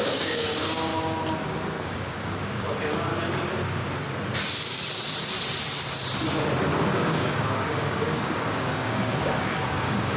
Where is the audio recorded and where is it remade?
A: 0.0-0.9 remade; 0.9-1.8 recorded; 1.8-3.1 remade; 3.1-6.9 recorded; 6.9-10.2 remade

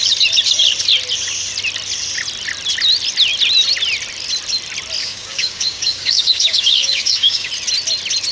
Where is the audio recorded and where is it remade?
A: 0.0-5.0 recorded; 5.0-7.5 remade; 7.5-8.3 recorded

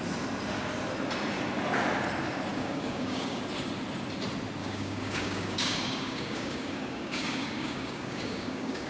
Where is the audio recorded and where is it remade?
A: 0.0-2.5 recorded; 2.5-3.4 remade; 3.4-4.6 recorded; 4.6-8.9 remade

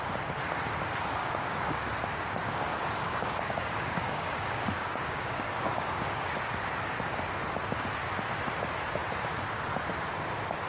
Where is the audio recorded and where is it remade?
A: 0.0-1.2 recorded; 1.2-1.9 remade; 1.9-2.4 recorded; 2.4-6.6 remade; 6.6-10.7 recorded

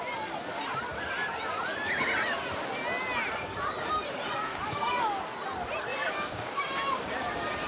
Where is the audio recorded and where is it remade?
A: 0.0-4.5 recorded; 4.5-5.2 remade; 5.2-5.9 recorded; 5.9-7.1 remade; 7.1-7.7 recorded